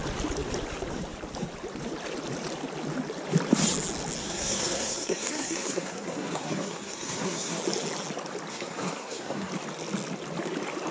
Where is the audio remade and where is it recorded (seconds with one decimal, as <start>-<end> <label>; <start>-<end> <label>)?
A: 0.0-4.2 recorded; 4.2-7.6 remade; 7.6-8.5 recorded; 8.5-9.5 remade; 9.5-10.9 recorded